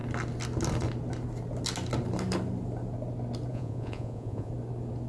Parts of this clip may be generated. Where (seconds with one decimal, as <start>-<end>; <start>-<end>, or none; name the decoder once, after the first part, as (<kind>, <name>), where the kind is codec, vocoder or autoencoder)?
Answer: 3.5-4.5 (vocoder, Vocos)